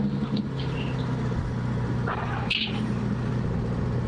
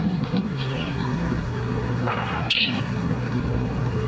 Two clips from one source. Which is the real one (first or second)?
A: first